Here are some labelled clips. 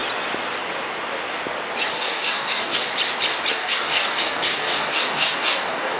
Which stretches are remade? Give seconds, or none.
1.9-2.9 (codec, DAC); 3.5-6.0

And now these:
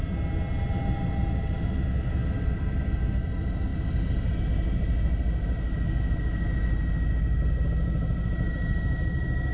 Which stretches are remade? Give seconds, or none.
none

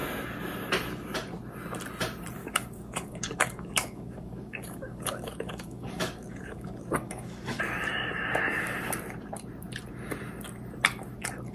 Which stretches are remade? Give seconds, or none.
2.4-7.6 (codec, DAC)

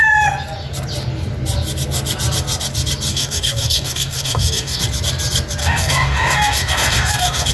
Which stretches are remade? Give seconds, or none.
3.1-4.8 (codec, DAC); 5.6-7.5

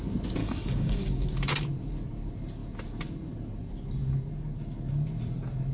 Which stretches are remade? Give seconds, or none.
0.4-1.2 (codec, DAC)

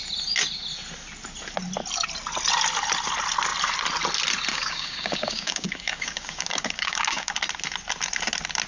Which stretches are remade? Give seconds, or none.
4.5-7.3 (codec, DAC)

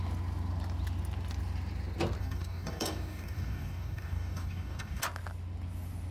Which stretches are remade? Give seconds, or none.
2.2-5.0 (codec, DAC)

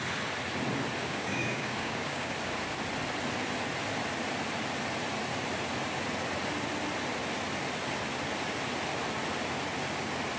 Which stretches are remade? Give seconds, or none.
1.0-2.3 (codec, DAC)